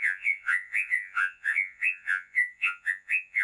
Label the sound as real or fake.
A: fake